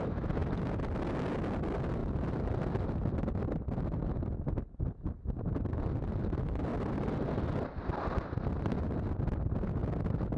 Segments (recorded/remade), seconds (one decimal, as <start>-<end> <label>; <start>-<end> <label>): 0.0-2.0 recorded; 2.0-6.1 remade; 6.1-6.7 recorded; 6.7-9.1 remade; 9.1-10.4 recorded